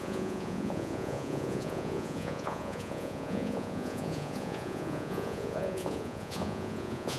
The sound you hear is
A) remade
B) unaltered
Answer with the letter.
A